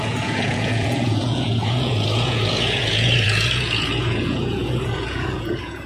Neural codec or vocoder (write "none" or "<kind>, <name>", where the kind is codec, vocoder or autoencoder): vocoder, Vocos